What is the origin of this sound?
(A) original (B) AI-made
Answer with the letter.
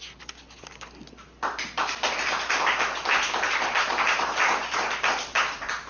A